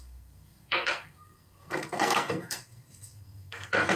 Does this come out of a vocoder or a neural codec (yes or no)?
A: yes